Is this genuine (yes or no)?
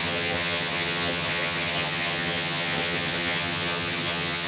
no